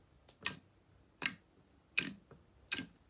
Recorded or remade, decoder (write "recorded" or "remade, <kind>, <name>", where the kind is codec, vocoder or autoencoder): recorded